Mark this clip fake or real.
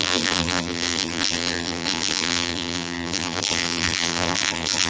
fake